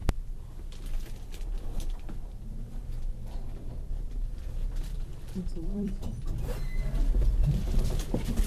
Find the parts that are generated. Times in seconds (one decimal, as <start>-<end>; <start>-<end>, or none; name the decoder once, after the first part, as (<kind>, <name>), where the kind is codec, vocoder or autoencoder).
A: 5.1-6.0 (vocoder, BigVGAN v2)